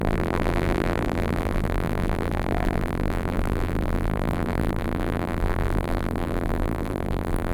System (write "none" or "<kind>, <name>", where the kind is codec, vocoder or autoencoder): vocoder, BigVGAN v2